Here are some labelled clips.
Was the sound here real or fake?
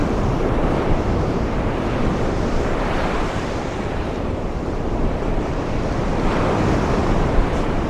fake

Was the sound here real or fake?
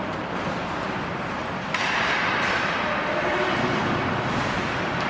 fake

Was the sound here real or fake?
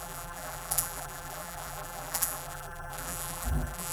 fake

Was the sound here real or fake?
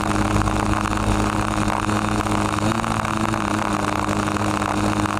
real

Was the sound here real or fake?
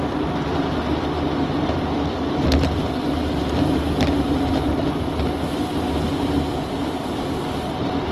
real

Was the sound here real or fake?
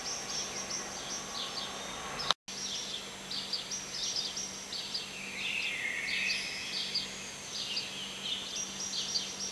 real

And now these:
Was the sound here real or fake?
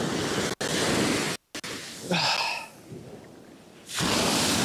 real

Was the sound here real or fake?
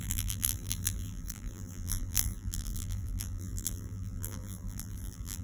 fake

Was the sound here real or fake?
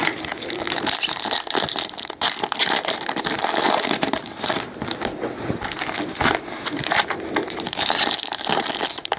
fake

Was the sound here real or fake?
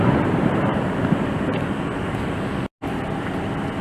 real